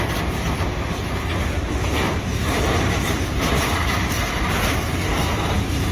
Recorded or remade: remade